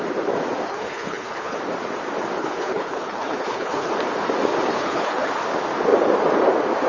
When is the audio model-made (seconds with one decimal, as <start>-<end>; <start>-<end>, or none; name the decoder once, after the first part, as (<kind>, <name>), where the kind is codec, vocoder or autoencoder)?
0.7-1.6 (codec, HILCodec); 2.4-3.9; 4.7-5.3